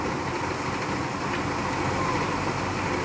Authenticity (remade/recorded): recorded